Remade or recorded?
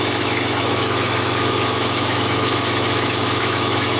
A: remade